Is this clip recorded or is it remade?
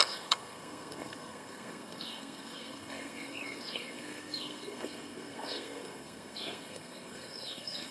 remade